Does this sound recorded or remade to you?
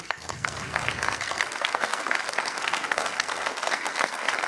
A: remade